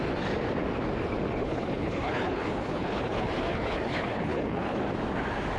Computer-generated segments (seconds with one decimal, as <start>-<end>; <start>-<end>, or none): 1.4-4.8